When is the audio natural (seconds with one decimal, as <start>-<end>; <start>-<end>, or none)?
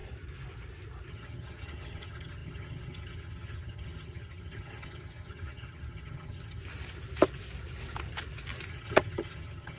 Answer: 0.0-1.1; 6.6-8.7